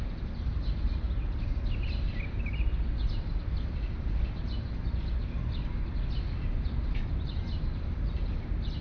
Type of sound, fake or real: real